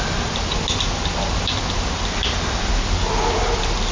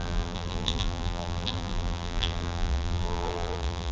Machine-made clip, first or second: second